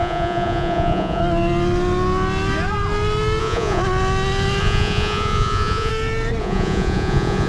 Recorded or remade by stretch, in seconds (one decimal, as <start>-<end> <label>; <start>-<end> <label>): 0.0-1.2 remade; 1.2-3.4 recorded; 3.4-3.8 remade; 3.8-4.6 recorded; 4.6-5.9 remade; 5.9-6.4 recorded; 6.4-7.5 remade